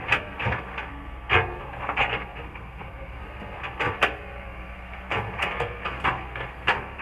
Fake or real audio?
fake